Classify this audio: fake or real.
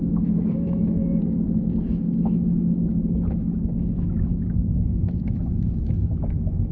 fake